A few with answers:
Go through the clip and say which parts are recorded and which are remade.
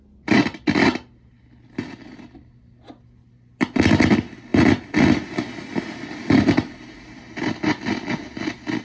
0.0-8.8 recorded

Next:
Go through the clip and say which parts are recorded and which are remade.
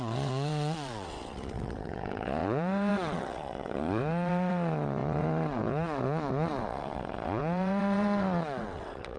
0.0-9.2 remade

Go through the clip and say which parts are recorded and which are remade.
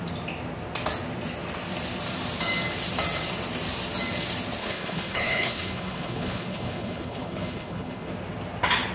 0.0-4.6 recorded; 4.6-8.1 remade; 8.1-8.9 recorded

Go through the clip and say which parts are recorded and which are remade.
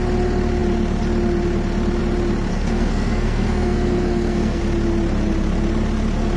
0.0-2.5 recorded; 2.5-4.6 remade; 4.6-6.4 recorded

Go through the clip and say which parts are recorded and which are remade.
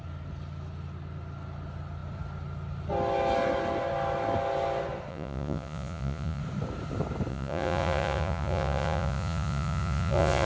0.0-5.1 recorded; 5.1-6.4 remade; 6.4-7.3 recorded; 7.3-10.5 remade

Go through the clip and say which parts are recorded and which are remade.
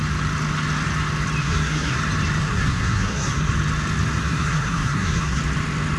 0.0-1.4 recorded; 1.4-2.0 remade; 2.0-2.4 recorded; 2.4-3.5 remade; 3.5-4.2 recorded; 4.2-5.4 remade; 5.4-6.0 recorded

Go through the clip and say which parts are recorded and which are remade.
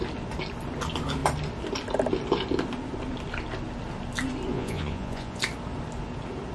0.0-4.5 recorded; 4.5-5.4 remade; 5.4-6.5 recorded